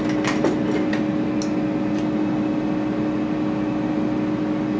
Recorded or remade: recorded